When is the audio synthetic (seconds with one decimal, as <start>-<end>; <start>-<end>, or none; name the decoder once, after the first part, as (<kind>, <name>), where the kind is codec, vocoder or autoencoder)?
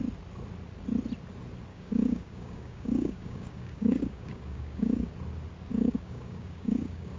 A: 1.7-5.1 (codec, DAC); 5.7-7.2